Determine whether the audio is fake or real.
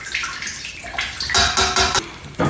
real